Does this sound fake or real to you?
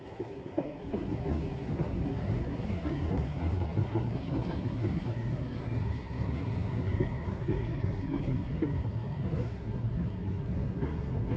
fake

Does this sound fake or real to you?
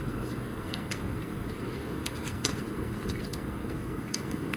fake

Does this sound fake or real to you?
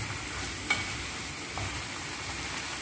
real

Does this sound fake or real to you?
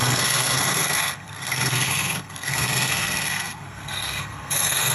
fake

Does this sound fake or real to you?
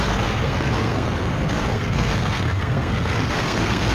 fake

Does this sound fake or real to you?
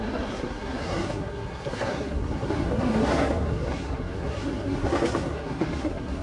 fake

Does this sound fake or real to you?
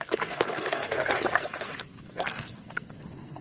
fake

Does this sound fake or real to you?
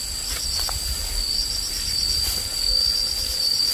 real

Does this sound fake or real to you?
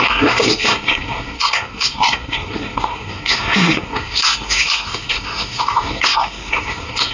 fake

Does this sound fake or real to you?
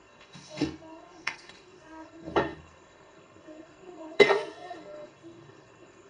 fake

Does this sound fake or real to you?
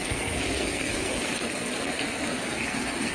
fake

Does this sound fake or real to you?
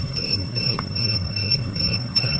fake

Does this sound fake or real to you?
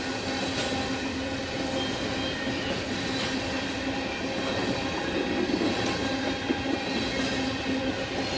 real